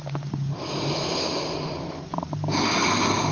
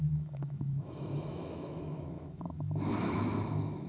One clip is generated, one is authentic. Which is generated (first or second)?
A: second